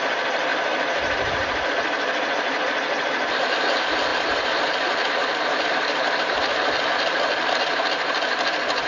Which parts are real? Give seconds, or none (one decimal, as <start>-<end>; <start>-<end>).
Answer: 0.0-0.5; 1.7-4.1; 6.9-8.9